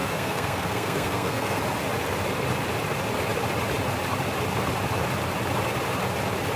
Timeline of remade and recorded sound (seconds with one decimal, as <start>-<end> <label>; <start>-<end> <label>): 0.0-1.6 remade; 1.6-6.6 recorded